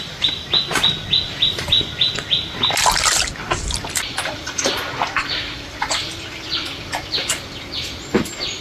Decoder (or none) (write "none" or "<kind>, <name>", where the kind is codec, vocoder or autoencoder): none